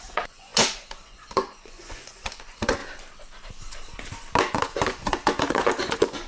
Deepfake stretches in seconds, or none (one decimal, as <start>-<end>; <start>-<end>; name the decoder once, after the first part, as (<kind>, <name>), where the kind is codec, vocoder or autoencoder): 0.0-2.8 (vocoder, Vocos); 4.4-6.3